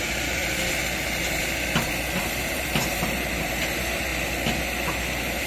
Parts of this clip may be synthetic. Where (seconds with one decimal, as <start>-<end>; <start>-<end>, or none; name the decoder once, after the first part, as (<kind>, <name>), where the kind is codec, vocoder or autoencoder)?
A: 0.0-0.4 (vocoder, BigVGAN v2); 2.2-4.1